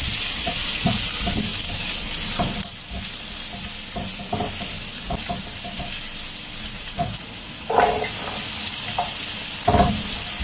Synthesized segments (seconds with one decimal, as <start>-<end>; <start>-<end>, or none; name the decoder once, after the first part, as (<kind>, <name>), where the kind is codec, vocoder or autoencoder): 0.4-1.1 (vocoder, Vocos); 6.7-7.5